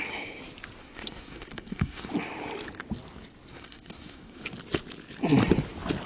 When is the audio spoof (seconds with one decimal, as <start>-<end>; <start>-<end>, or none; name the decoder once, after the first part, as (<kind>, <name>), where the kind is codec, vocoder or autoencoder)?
0.8-2.0 (codec, SNAC); 3.5-4.4